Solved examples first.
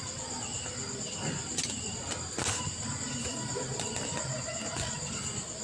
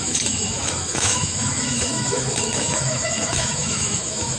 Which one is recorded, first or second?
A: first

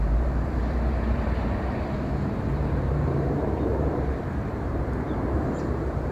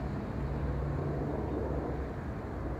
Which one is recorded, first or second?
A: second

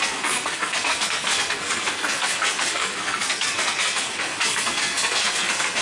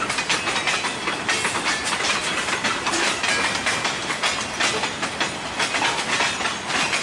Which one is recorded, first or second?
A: second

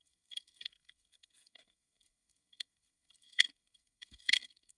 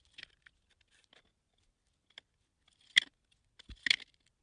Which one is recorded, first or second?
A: second